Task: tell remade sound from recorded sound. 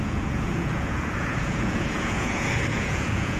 remade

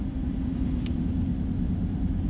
recorded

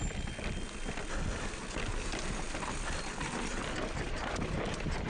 recorded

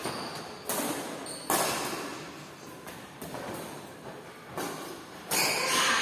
recorded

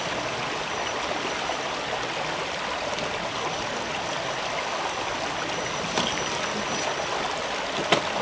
recorded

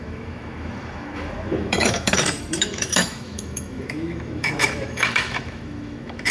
remade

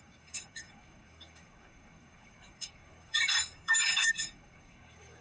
remade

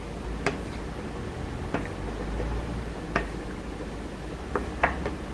recorded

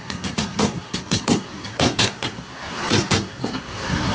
remade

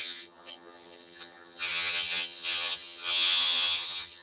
remade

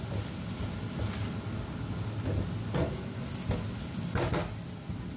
recorded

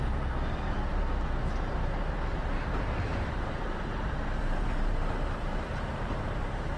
remade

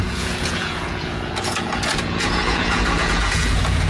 remade